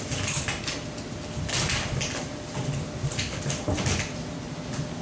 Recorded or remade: recorded